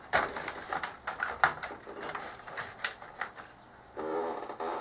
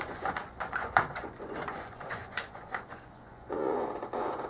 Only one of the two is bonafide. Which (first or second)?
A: first